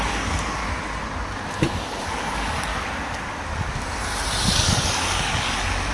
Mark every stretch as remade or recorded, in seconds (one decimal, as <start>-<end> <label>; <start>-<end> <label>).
0.0-0.6 remade; 0.6-2.0 recorded; 2.0-2.7 remade; 2.7-4.4 recorded; 4.4-5.9 remade